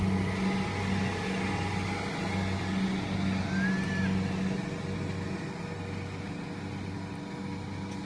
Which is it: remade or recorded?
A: recorded